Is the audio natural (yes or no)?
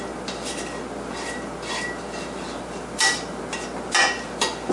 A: yes